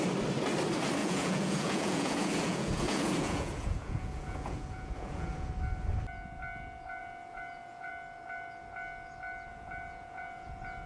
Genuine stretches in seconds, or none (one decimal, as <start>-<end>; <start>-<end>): 0.0-1.0; 5.5-7.0; 7.9-9.5